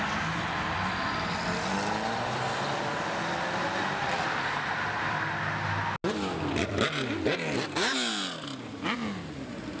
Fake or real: real